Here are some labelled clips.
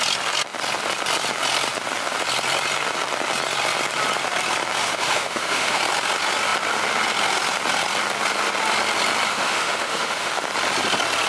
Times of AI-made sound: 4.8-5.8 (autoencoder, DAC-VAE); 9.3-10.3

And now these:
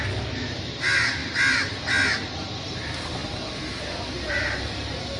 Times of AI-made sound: none